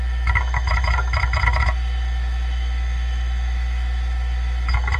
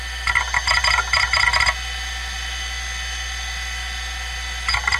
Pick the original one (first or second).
second